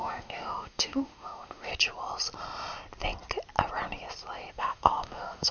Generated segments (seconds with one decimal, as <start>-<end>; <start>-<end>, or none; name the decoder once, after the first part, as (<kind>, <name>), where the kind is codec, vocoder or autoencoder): 0.0-1.7 (autoencoder, DAC-VAE); 4.5-5.5